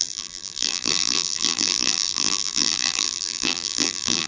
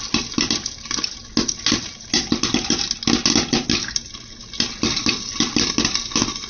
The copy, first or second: first